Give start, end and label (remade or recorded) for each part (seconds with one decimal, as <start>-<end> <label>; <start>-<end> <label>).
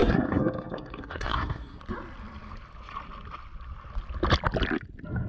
0.0-1.8 remade; 1.8-5.3 recorded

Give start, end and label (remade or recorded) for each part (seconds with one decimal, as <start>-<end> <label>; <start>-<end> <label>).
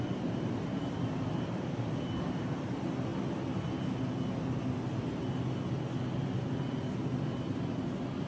0.0-3.1 remade; 3.1-7.4 recorded; 7.4-8.3 remade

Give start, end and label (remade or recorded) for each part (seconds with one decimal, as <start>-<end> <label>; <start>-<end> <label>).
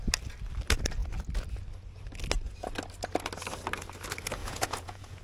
0.0-4.4 recorded; 4.4-5.2 remade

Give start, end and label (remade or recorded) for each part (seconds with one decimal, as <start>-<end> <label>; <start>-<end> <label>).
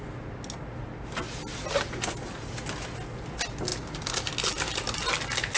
0.0-5.6 recorded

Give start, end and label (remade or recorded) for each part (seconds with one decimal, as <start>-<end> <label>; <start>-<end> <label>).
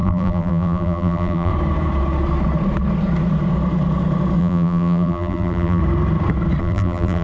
0.0-1.5 remade; 1.5-4.4 recorded; 4.4-5.8 remade; 5.8-6.6 recorded; 6.6-7.2 remade